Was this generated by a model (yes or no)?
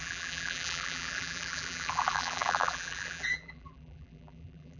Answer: yes